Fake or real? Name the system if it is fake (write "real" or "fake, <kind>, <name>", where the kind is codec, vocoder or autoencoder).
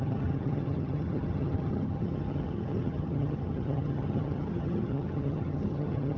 fake, vocoder, HiFi-GAN